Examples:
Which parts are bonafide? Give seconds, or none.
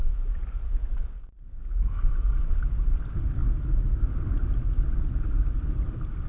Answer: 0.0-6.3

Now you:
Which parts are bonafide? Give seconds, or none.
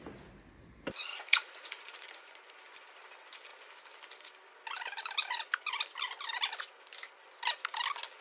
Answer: 0.0-1.1; 2.4-8.2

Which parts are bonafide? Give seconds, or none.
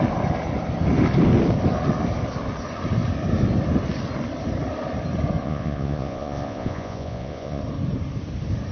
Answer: 0.0-5.4; 7.6-8.7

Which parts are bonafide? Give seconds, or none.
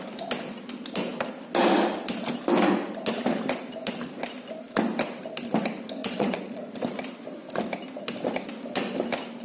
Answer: 0.0-6.0; 6.6-9.4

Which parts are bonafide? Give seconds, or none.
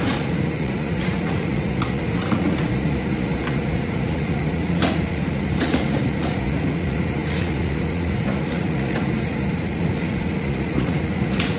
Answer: none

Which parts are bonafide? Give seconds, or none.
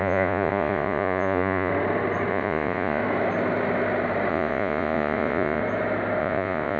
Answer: 1.7-2.3; 3.0-4.3; 5.6-6.2